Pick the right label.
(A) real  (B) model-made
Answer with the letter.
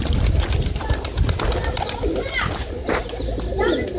A